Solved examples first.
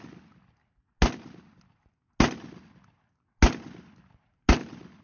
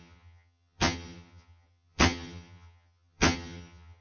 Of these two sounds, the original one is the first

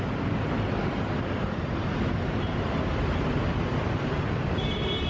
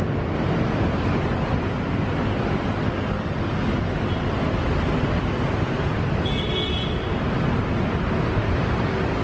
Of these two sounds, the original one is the second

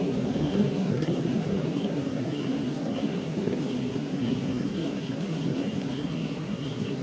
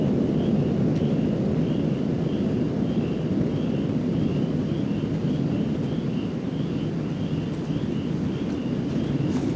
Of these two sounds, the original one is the second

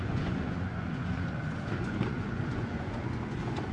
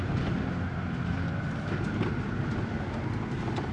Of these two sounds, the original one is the second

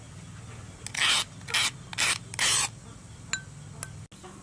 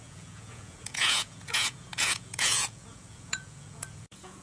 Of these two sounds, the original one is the first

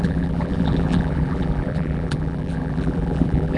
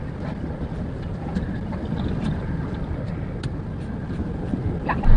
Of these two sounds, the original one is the second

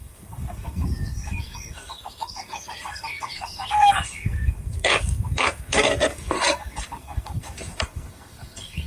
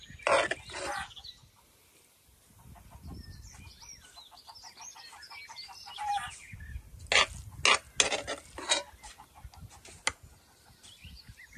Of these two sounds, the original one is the second